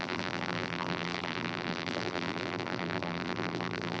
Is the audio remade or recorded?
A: remade